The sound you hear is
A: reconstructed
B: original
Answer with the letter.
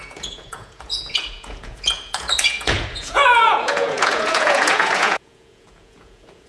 A